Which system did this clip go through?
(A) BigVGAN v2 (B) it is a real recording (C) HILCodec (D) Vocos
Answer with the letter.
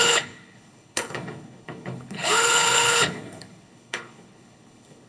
C